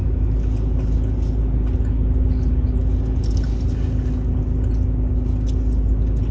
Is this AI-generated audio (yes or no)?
no